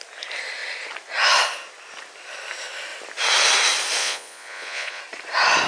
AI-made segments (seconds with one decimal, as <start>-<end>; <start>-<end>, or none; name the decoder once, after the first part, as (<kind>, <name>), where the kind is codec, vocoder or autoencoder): 4.0-5.0 (vocoder, Vocos)